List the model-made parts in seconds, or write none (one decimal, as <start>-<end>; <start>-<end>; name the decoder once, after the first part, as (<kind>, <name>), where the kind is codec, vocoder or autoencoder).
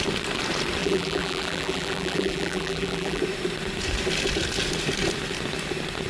0.8-3.2 (vocoder, BigVGAN v2)